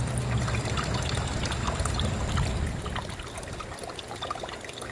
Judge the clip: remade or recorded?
recorded